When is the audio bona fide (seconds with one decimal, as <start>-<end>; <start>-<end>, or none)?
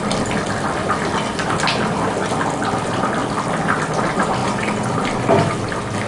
0.0-6.1